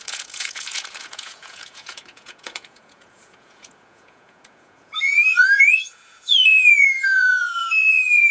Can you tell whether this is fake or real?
fake